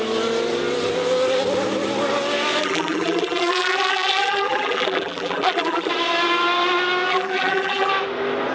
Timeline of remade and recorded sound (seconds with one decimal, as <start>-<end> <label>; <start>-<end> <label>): 0.0-2.6 recorded; 2.6-5.9 remade; 5.9-7.1 recorded; 7.1-7.9 remade; 7.9-8.5 recorded